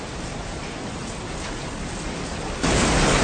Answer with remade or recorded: recorded